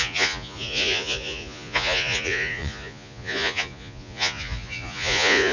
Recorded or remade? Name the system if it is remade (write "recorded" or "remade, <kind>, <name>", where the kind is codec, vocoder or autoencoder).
remade, vocoder, Vocos